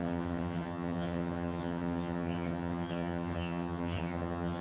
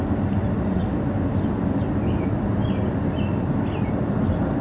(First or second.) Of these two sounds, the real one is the second